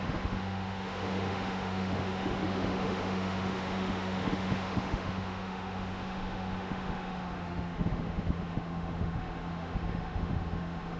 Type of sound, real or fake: fake